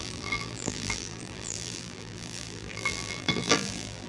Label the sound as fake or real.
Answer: fake